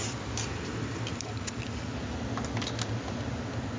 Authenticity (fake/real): real